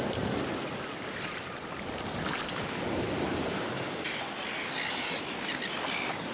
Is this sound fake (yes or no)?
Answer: no